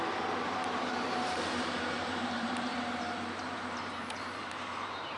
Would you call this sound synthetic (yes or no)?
yes